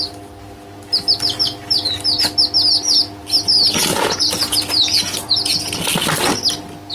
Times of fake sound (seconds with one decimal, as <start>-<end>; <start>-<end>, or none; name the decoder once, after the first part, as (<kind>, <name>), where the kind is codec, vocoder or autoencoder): 3.8-5.9 (vocoder, Vocos)